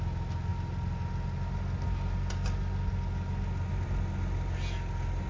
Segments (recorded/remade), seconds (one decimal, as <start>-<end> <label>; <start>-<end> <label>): 0.0-5.3 recorded